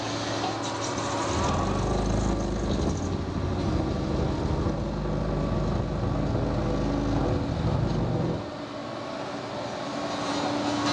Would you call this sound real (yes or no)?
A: yes